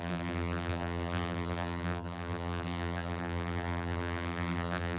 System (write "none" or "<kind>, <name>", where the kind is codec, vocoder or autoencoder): vocoder, BigVGAN v2